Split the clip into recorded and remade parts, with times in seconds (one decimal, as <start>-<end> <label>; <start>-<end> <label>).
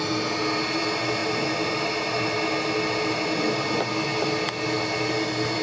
0.0-5.6 recorded